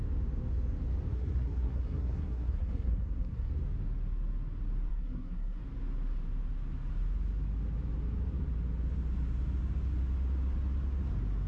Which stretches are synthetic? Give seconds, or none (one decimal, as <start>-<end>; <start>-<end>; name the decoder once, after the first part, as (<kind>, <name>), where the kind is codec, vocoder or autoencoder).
1.1-3.5 (codec, SNAC); 4.9-5.6

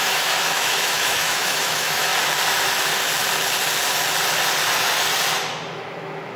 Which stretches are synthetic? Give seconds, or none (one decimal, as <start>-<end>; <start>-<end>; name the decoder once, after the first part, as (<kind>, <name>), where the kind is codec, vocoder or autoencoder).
0.0-2.1 (autoencoder, DAC-VAE); 5.7-6.4

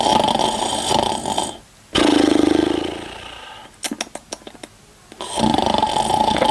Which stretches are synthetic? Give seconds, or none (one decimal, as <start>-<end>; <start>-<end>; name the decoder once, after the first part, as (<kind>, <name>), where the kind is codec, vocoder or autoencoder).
none

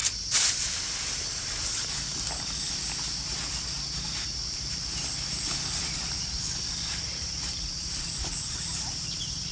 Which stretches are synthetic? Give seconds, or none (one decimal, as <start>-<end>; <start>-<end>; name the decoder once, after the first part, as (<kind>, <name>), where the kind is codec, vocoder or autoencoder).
none

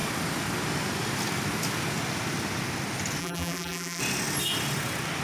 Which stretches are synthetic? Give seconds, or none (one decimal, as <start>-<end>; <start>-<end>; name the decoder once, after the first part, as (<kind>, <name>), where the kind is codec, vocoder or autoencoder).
3.2-4.0 (vocoder, BigVGAN v2)

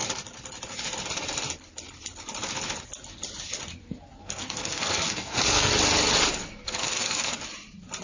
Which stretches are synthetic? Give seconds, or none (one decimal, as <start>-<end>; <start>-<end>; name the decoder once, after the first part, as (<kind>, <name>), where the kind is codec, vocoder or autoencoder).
4.2-5.7 (codec, SNAC); 6.4-7.3

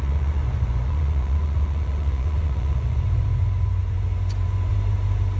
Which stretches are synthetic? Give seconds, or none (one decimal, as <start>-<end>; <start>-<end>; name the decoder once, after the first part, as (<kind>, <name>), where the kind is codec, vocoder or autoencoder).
0.0-4.7 (vocoder, Vocos)